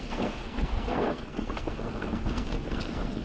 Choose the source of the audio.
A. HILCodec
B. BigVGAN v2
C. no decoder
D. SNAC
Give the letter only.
D